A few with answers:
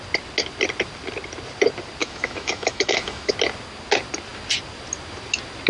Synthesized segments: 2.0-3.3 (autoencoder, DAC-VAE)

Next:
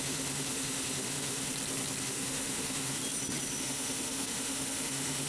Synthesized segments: 0.0-1.5 (autoencoder, DAC-VAE); 2.0-3.0; 3.6-5.3

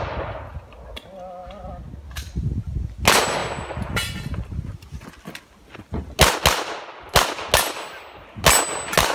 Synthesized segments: none

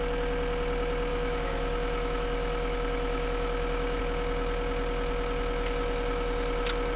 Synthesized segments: 1.1-4.0 (autoencoder, DAC-VAE)